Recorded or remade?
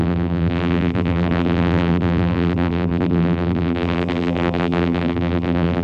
remade